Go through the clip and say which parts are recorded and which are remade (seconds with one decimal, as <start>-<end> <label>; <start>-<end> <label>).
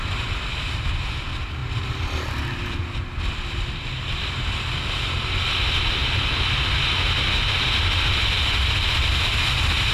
0.0-9.9 recorded